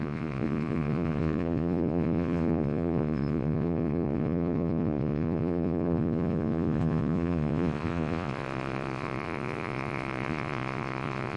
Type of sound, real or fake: fake